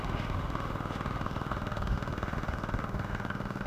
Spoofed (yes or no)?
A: yes